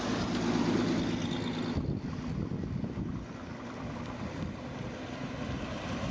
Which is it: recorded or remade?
recorded